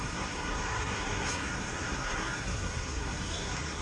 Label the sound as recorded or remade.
remade